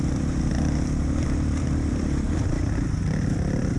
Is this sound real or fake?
fake